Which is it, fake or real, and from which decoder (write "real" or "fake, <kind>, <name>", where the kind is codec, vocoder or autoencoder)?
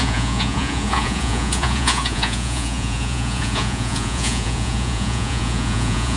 fake, vocoder, Vocos